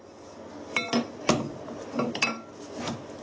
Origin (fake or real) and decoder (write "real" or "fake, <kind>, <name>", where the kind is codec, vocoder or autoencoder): real